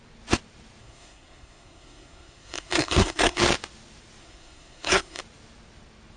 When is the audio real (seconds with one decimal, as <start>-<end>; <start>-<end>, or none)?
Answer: 0.0-0.8; 3.4-4.2; 5.2-6.2